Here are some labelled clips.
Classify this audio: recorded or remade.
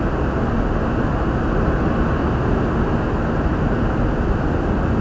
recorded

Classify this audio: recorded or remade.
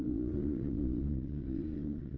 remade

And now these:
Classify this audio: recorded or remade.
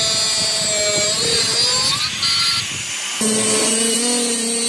recorded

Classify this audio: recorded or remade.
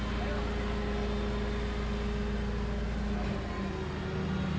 recorded